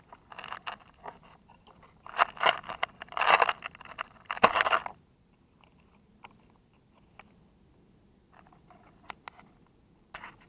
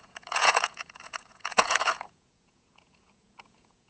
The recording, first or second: first